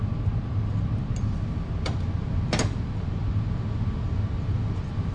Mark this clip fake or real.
real